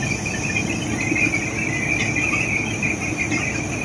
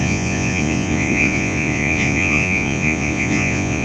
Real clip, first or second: first